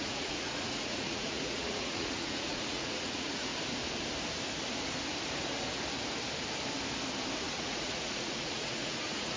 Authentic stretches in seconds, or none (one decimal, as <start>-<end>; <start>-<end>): 3.5-7.4